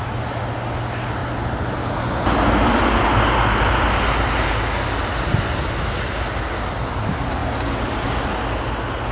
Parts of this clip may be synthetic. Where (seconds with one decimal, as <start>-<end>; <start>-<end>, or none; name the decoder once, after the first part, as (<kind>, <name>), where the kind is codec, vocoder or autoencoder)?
none